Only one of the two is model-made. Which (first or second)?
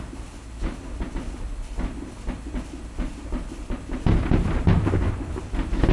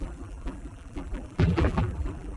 second